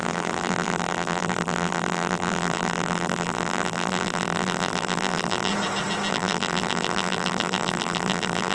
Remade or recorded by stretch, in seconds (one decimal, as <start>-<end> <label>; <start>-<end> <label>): 0.0-5.5 remade; 5.5-6.1 recorded; 6.1-8.5 remade